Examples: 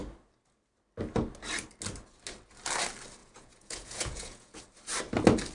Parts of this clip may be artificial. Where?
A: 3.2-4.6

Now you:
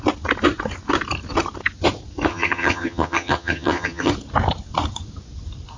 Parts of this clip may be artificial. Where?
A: 2.3-4.1

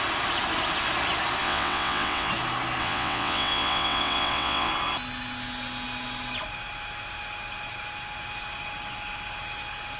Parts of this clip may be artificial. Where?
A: 1.4-2.3; 2.8-4.7